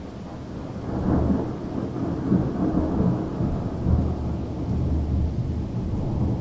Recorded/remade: recorded